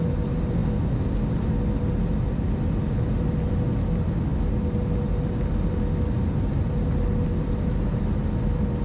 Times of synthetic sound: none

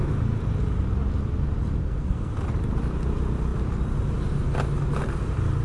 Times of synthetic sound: 1.8-2.3 (codec, SNAC)